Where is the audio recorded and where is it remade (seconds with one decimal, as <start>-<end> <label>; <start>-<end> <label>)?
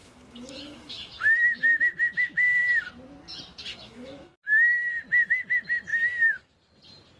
0.0-1.8 remade; 1.8-3.7 recorded; 3.7-4.9 remade; 4.9-5.9 recorded; 5.9-6.5 remade; 6.5-7.2 recorded